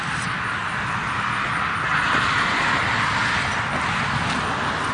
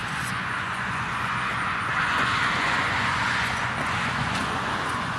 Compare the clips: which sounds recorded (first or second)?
first